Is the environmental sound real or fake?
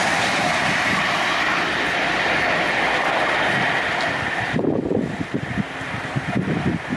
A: real